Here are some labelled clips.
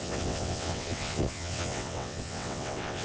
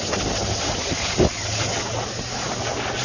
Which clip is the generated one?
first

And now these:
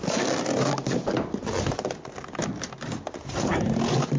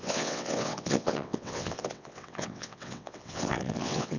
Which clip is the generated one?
second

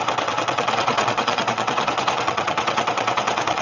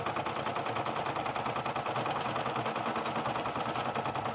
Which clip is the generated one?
first